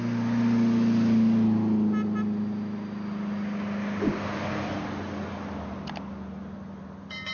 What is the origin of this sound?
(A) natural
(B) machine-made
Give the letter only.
A